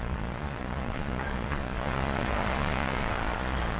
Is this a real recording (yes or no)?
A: no